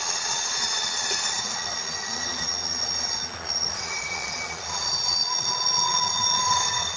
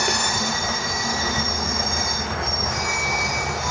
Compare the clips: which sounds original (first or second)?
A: second